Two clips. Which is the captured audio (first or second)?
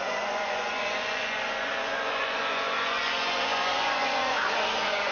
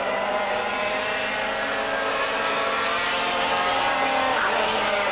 second